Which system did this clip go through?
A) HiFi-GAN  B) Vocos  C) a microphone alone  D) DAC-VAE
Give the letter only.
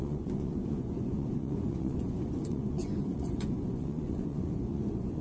B